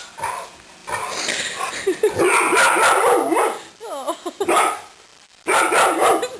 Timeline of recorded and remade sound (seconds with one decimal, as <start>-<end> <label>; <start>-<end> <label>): 0.0-5.1 recorded; 5.1-5.6 remade; 5.6-6.4 recorded